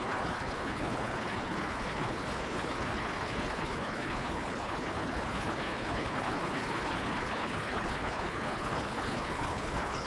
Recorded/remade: remade